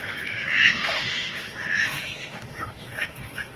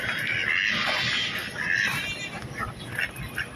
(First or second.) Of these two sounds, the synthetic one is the first